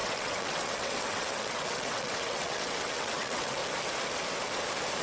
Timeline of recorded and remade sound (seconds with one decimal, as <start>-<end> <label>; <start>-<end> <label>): 0.0-3.6 remade; 3.6-5.0 recorded